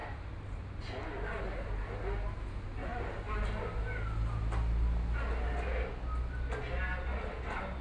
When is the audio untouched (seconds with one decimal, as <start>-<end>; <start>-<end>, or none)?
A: 0.0-7.8